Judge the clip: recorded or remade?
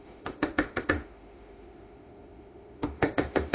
remade